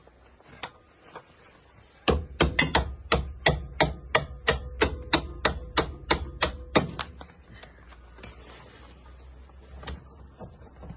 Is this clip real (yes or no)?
yes